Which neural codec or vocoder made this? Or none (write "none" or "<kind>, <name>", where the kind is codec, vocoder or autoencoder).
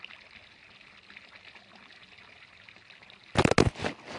none